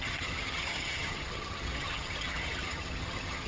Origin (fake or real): fake